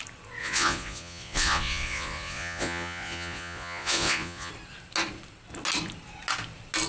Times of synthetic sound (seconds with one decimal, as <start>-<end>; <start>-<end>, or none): 0.4-4.5